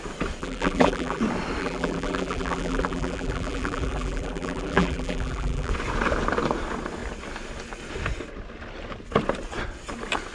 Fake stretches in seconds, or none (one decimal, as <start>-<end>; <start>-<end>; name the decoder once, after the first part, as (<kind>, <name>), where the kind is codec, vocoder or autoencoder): 0.4-1.2 (vocoder, BigVGAN v2); 1.6-5.7